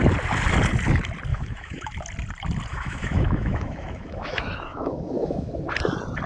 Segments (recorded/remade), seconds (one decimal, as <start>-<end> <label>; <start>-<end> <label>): 0.0-1.3 recorded; 1.3-1.9 remade; 1.9-2.7 recorded; 2.7-5.5 remade; 5.5-6.3 recorded